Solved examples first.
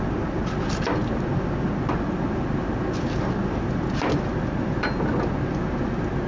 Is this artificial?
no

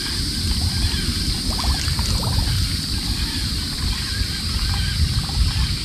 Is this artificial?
no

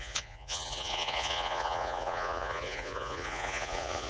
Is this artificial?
yes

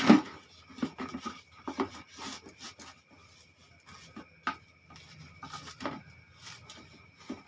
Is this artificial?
no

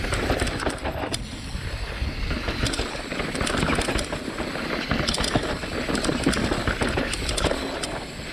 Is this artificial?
no